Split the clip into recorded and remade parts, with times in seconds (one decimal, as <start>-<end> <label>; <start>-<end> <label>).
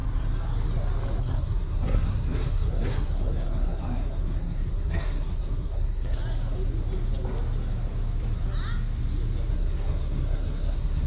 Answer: 0.0-1.2 recorded; 1.2-6.2 remade; 6.2-9.5 recorded; 9.5-11.1 remade